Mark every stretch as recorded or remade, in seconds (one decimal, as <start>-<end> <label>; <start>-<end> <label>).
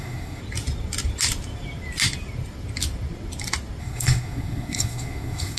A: 0.0-0.4 remade; 0.4-3.8 recorded; 3.8-5.6 remade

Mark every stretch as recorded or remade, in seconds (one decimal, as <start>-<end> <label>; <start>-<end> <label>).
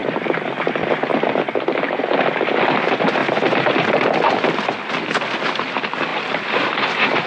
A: 0.0-0.6 remade; 0.6-1.1 recorded; 1.1-2.0 remade; 2.0-6.1 recorded; 6.1-6.7 remade; 6.7-7.3 recorded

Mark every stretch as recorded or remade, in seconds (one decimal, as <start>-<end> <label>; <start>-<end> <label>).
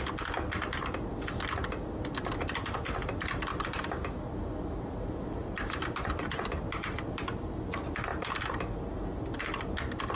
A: 0.0-3.5 recorded; 3.5-4.4 remade; 4.4-5.4 recorded; 5.4-7.2 remade; 7.2-10.2 recorded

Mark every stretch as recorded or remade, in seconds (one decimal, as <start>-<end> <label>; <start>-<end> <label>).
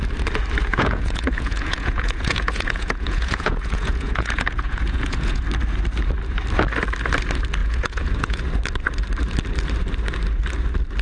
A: 0.0-0.7 recorded; 0.7-5.4 remade; 5.4-7.6 recorded; 7.6-8.4 remade; 8.4-11.0 recorded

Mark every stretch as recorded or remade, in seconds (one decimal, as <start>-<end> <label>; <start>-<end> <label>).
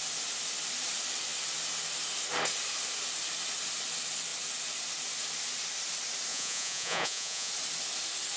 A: 0.0-6.3 recorded; 6.3-7.5 remade; 7.5-8.4 recorded